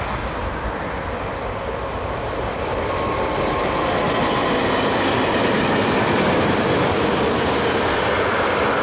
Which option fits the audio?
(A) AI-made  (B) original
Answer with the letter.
B